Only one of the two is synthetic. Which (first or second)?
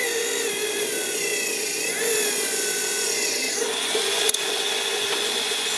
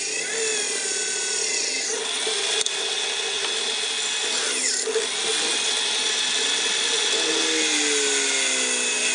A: first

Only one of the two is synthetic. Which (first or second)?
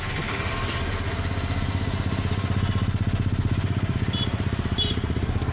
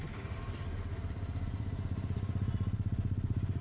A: second